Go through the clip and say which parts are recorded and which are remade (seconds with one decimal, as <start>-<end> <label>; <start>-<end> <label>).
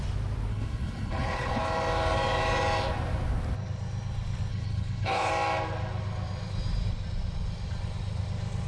0.0-0.5 recorded; 0.5-1.6 remade; 1.6-4.5 recorded; 4.5-5.3 remade; 5.3-8.7 recorded